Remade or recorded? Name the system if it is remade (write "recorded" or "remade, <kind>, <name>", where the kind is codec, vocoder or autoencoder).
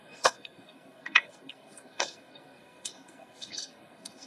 remade, codec, SNAC